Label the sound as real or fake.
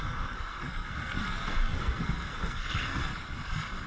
fake